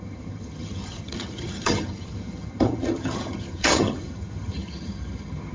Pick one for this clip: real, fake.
fake